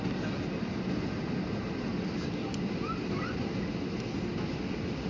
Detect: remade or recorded recorded